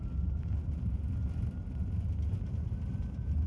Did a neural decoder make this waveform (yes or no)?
no